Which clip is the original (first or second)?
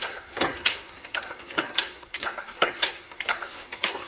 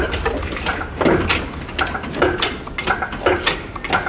second